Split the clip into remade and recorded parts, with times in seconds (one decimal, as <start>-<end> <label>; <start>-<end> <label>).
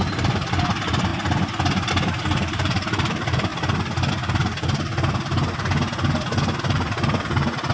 0.0-1.1 remade; 1.1-1.9 recorded; 1.9-3.5 remade; 3.5-4.1 recorded; 4.1-4.9 remade; 4.9-6.6 recorded; 6.6-7.7 remade